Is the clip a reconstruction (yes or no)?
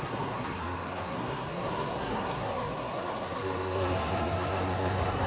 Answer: yes